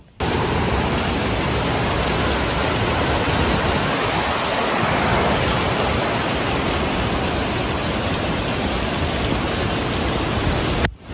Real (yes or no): yes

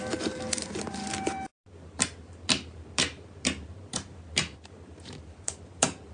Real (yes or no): no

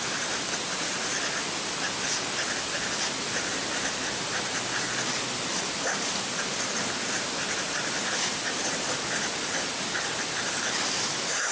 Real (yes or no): yes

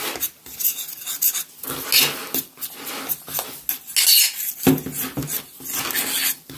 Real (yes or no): yes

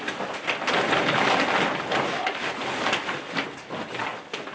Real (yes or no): yes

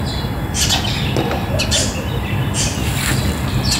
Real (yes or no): yes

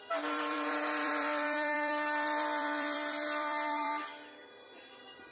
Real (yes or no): no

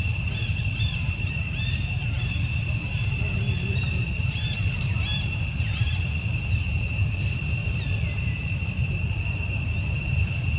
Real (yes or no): no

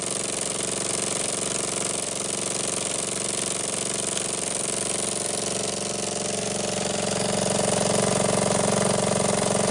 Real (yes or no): yes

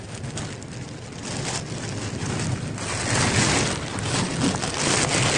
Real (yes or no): yes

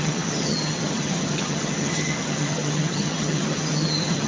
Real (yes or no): no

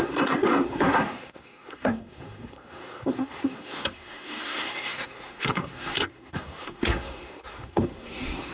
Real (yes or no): no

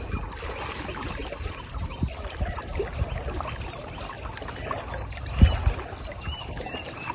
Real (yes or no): yes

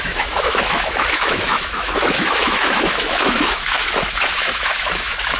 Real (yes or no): no